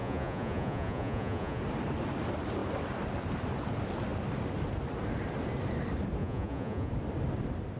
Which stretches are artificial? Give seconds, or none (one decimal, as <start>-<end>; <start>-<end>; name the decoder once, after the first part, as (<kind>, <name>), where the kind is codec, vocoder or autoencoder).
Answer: 0.0-1.6 (vocoder, Vocos); 6.2-6.9

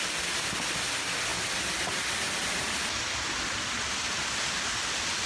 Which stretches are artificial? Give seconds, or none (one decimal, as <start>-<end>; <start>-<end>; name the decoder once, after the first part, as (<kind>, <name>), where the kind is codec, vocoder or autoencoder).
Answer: none

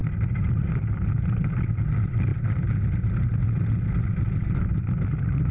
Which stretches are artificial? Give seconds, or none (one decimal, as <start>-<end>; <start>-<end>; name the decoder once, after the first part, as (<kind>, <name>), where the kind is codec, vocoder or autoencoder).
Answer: none

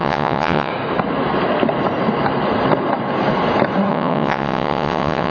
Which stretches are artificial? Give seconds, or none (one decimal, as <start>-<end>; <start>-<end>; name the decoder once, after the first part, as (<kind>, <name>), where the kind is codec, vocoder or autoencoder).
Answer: 0.0-0.7 (vocoder, WaveNeXt); 3.9-5.3